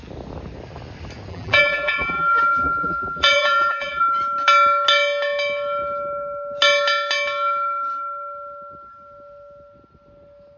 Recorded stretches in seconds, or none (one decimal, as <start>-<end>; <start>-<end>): 0.0-1.3; 4.0-10.6